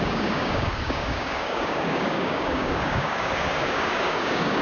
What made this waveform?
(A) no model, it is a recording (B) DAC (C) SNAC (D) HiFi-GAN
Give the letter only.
B